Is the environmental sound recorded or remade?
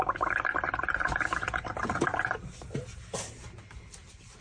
recorded